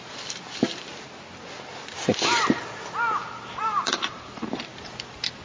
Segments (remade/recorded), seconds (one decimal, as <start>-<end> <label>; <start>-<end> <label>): 0.0-0.9 remade; 0.9-2.1 recorded; 2.1-2.6 remade; 2.6-3.6 recorded; 3.6-4.7 remade; 4.7-5.4 recorded